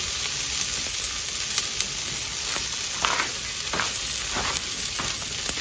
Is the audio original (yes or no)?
yes